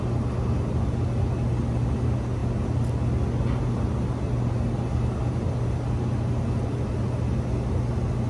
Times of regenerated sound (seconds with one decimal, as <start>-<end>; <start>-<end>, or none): none